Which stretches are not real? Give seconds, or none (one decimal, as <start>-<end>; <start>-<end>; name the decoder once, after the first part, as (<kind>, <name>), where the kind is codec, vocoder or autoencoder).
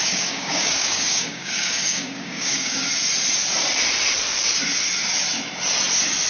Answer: 0.0-2.9 (codec, DAC)